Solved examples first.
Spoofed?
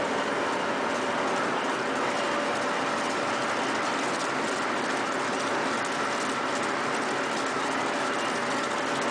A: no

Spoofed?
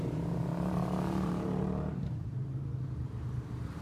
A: yes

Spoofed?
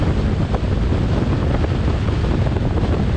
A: no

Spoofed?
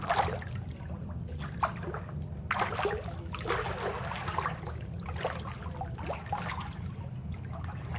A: no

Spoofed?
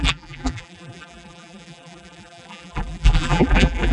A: yes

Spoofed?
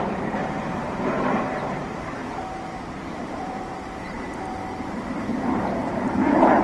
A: yes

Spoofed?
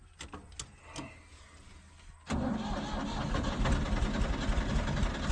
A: no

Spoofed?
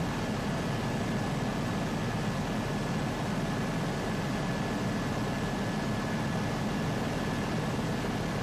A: no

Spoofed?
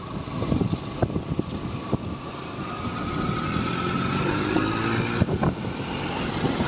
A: no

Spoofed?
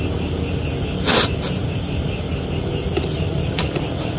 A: no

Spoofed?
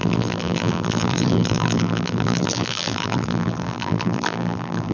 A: yes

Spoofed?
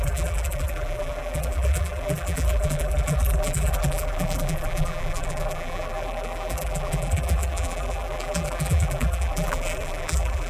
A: yes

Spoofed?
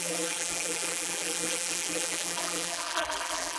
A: yes